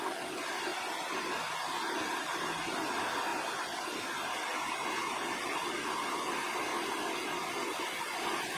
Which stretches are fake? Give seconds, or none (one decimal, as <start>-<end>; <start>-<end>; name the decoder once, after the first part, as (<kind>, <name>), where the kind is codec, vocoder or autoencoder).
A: none